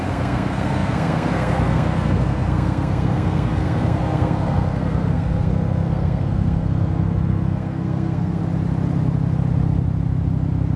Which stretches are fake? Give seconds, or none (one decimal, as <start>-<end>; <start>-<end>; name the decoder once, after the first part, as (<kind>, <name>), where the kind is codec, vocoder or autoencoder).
0.0-8.4 (codec, SNAC)